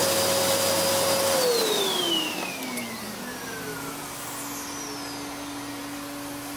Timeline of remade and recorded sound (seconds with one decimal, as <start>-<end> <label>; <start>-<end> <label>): 0.0-6.6 recorded